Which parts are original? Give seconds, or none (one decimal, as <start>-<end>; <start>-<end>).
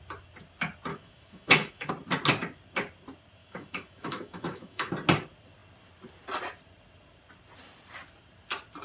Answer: 0.0-0.9; 1.9-3.4; 4.9-8.8